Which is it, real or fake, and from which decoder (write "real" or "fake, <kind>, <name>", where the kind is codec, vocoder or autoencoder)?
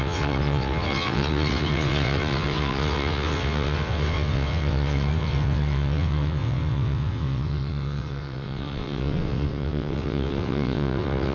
fake, vocoder, WaveNeXt